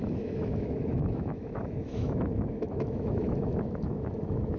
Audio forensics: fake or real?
fake